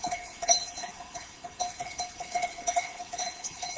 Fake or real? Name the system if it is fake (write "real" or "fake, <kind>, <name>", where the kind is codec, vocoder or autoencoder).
fake, codec, HILCodec